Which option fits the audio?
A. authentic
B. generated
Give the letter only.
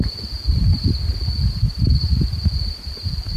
A